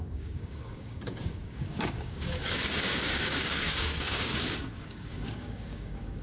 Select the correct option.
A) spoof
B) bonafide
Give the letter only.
A